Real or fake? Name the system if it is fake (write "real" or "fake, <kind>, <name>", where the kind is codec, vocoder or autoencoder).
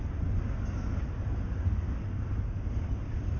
real